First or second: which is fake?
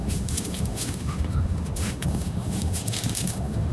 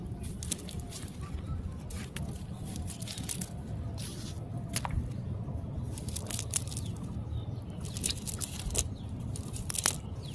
first